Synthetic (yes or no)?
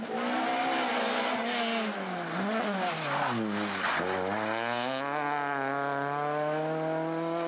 no